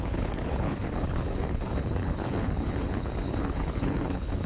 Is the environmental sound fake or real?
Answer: fake